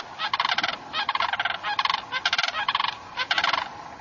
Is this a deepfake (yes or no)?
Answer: no